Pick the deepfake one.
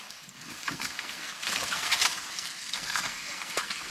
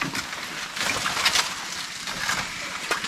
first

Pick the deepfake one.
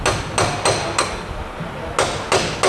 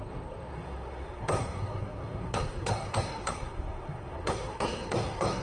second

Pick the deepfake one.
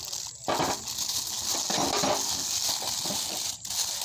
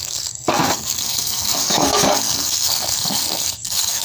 second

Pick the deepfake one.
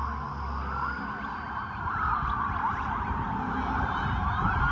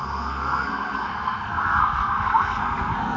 second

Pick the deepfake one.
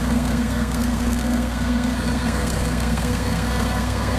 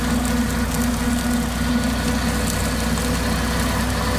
first